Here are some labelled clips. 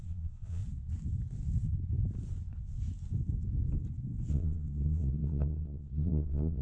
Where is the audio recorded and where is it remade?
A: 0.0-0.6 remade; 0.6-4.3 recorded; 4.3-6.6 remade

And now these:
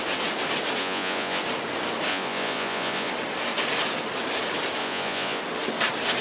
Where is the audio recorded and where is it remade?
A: 0.0-0.8 recorded; 0.8-1.4 remade; 1.4-2.1 recorded; 2.1-3.1 remade; 3.1-4.8 recorded; 4.8-5.4 remade; 5.4-6.2 recorded

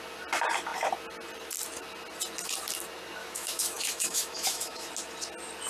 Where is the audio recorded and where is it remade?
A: 0.0-3.2 recorded; 3.2-4.9 remade; 4.9-5.7 recorded

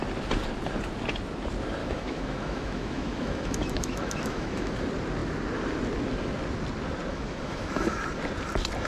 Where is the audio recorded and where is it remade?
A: 0.0-1.8 recorded; 1.8-4.7 remade; 4.7-7.1 recorded; 7.1-8.0 remade; 8.0-8.9 recorded

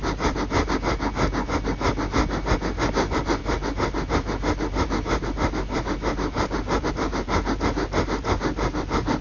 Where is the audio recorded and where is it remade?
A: 0.0-9.2 recorded

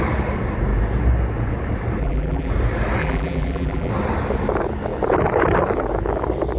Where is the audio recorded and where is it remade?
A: 0.0-2.0 recorded; 2.0-2.5 remade; 2.5-3.0 recorded; 3.0-3.9 remade; 3.9-6.6 recorded